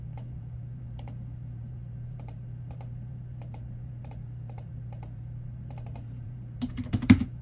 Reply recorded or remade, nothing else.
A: remade